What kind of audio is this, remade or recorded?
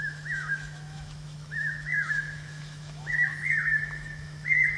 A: remade